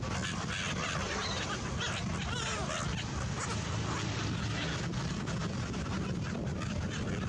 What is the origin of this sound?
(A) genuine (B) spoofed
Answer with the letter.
A